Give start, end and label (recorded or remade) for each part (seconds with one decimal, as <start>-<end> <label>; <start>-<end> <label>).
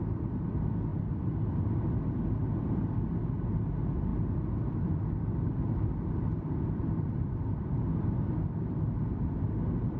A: 0.0-10.0 recorded